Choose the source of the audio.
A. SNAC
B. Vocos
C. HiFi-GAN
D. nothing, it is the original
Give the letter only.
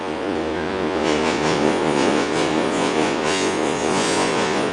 B